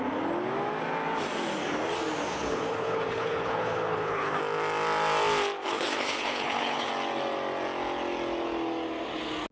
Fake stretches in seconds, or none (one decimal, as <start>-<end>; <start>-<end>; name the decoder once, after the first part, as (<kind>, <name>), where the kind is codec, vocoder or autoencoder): 2.3-4.4 (codec, HILCodec); 5.6-6.9